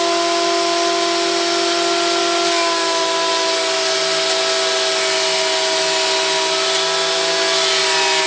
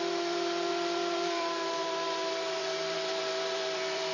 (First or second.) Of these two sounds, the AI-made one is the second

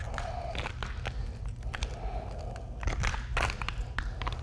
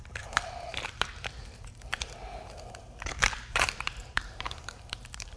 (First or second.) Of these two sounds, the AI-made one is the second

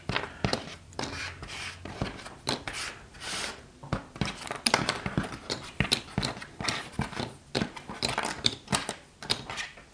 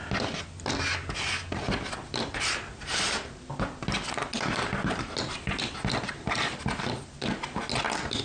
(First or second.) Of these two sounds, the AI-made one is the first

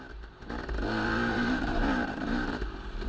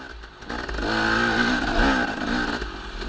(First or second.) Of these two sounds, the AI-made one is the first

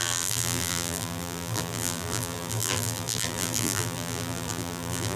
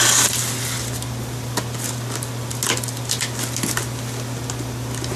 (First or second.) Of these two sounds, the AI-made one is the first